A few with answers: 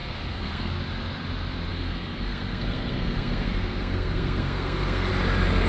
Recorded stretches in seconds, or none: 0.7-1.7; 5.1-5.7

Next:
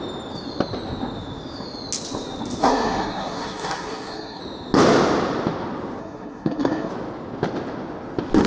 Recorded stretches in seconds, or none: 0.0-2.6; 4.4-6.0; 6.9-8.5

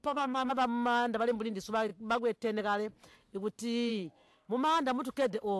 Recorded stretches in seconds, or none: 0.5-3.9; 4.5-5.6